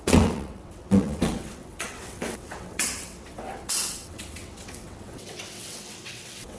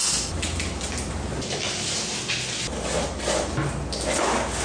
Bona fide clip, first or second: second